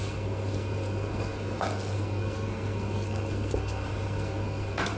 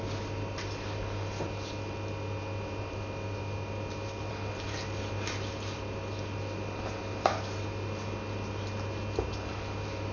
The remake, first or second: first